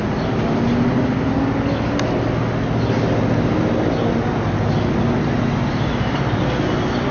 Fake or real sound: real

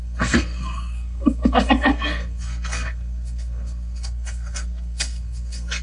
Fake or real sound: fake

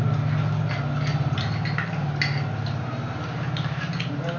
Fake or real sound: real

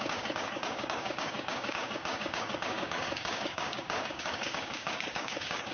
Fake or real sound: fake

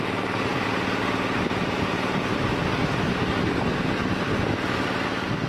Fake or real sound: real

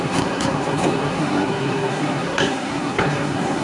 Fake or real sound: fake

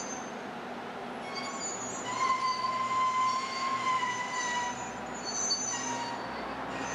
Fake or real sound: real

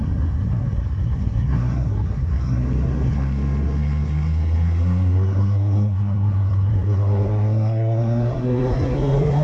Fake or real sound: fake